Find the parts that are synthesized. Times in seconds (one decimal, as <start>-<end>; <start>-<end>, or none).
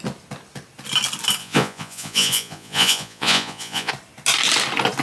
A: 1.4-3.9